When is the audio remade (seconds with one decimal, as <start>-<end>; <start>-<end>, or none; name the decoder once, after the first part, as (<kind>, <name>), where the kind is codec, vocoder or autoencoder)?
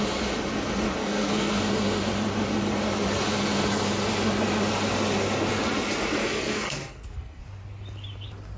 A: 1.0-1.6 (codec, SNAC); 6.2-7.4